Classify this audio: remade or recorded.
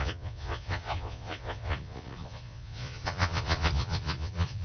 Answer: remade